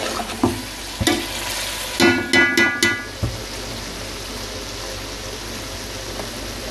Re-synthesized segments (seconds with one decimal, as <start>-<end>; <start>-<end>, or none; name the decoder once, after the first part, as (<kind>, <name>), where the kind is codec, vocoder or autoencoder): none